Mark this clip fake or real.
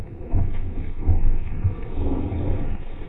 fake